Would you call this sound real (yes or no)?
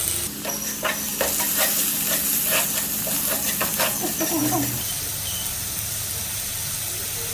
yes